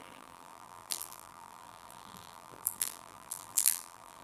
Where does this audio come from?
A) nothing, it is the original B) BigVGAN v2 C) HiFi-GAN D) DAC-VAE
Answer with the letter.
B